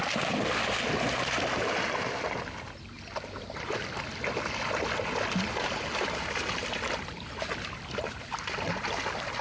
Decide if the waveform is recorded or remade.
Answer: recorded